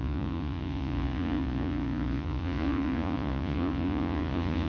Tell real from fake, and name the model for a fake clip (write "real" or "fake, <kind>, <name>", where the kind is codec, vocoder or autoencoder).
fake, vocoder, Vocos